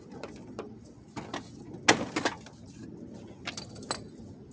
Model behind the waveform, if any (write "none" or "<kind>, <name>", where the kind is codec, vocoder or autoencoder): none